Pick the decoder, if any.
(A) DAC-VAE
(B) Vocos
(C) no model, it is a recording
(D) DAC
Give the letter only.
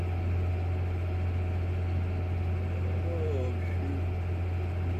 C